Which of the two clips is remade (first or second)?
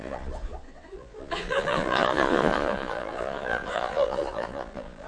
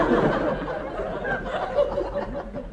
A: first